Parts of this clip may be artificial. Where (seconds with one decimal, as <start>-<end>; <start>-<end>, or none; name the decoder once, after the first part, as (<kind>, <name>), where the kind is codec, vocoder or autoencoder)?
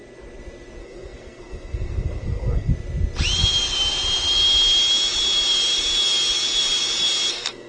0.8-2.7 (codec, SNAC); 7.3-7.7